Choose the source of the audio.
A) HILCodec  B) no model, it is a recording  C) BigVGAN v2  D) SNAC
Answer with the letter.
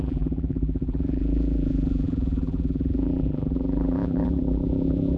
C